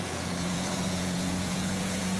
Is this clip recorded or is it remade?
remade